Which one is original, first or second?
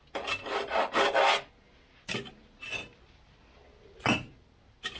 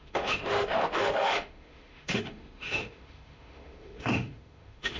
first